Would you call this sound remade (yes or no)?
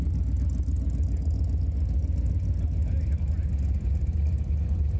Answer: no